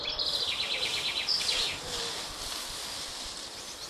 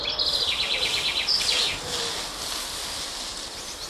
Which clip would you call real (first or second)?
second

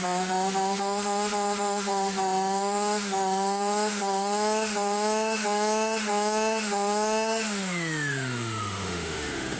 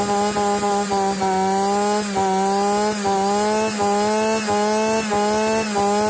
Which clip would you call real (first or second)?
second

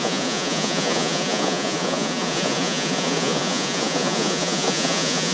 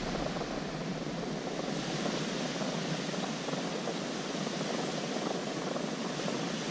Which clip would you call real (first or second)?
second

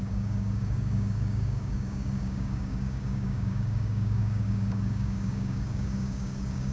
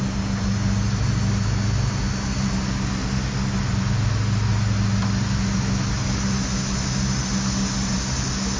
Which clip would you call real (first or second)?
second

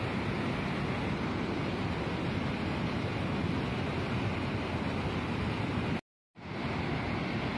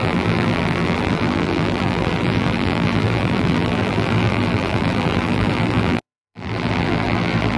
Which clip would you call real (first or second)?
first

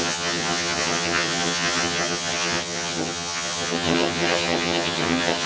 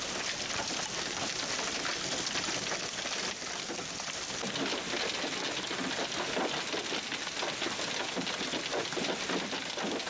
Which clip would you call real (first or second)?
second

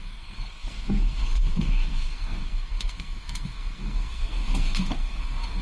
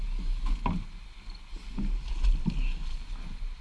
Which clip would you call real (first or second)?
second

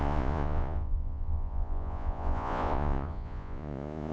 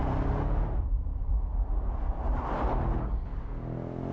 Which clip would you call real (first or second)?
second